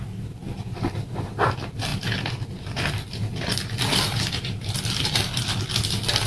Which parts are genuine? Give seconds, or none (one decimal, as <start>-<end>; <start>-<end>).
0.0-6.3